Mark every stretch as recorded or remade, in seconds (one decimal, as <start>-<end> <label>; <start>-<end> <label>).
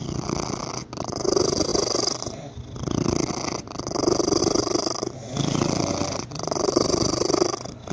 0.0-1.7 remade; 1.7-4.4 recorded; 4.4-7.9 remade